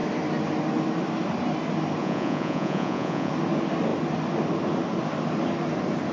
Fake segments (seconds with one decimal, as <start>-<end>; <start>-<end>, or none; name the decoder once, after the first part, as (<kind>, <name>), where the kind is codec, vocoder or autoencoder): 2.0-3.3 (vocoder, Vocos)

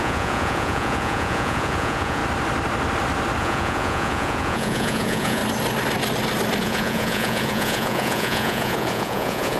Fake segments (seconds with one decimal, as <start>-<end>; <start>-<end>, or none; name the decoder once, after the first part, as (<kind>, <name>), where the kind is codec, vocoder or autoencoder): 0.0-2.2 (vocoder, Vocos); 3.4-5.4; 6.6-9.6

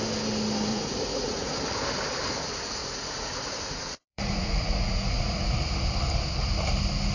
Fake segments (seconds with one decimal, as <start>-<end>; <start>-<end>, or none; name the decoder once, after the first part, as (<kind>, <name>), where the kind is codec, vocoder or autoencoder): 0.7-1.5 (vocoder, Vocos); 2.8-5.6

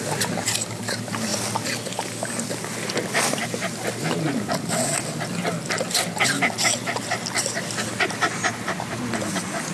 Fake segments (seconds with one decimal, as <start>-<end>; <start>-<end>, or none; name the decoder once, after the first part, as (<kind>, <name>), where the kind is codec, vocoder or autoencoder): none

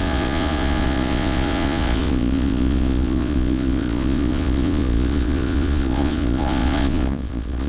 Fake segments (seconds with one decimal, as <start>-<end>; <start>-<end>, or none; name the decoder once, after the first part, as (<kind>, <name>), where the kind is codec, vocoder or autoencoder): 0.0-7.7 (vocoder, Vocos)

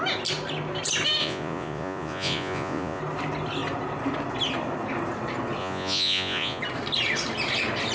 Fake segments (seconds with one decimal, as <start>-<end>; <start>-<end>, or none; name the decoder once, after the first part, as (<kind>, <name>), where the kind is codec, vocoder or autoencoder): 1.2-3.0 (vocoder, Vocos); 5.6-6.6

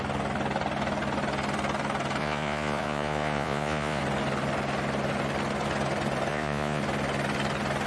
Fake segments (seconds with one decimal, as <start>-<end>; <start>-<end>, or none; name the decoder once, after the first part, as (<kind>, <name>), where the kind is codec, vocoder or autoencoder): 2.2-4.0 (vocoder, Vocos); 6.3-6.8

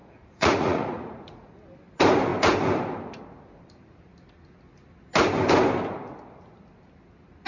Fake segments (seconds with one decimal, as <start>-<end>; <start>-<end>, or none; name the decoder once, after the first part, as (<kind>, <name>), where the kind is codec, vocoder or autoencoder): 0.0-1.5 (vocoder, Vocos)